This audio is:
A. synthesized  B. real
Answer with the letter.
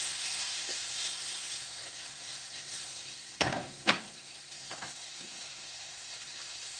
A